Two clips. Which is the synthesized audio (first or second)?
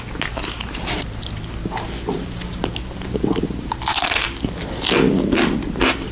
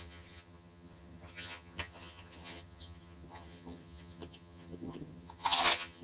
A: second